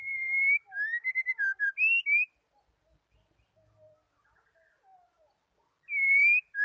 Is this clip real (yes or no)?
yes